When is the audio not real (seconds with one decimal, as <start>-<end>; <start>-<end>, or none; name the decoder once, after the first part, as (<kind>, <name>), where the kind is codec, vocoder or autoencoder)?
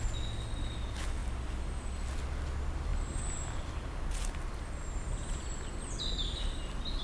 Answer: none